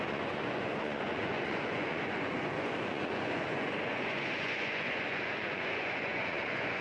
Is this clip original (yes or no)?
no